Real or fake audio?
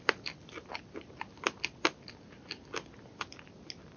real